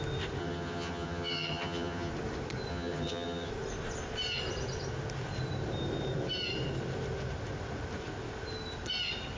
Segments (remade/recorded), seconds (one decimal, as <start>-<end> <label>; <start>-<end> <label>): 0.0-0.4 recorded; 0.4-2.1 remade; 2.1-2.7 recorded; 2.7-3.5 remade; 3.5-9.4 recorded